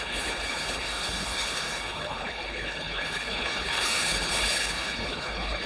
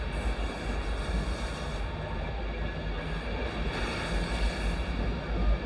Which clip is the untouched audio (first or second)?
second